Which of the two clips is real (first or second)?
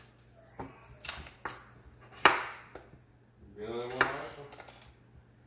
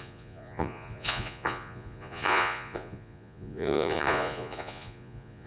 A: first